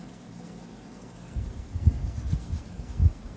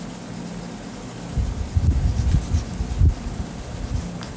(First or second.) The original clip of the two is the second